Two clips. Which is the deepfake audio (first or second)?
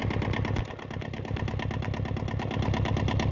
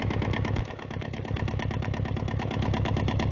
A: second